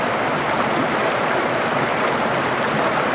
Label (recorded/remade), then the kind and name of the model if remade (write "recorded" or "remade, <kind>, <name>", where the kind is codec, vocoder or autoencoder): recorded